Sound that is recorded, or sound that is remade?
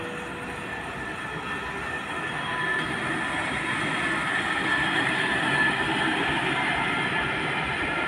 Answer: recorded